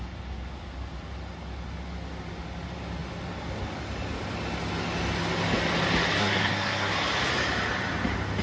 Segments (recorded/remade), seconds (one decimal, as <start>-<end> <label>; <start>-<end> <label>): 0.0-6.2 recorded; 6.2-6.9 remade; 6.9-8.4 recorded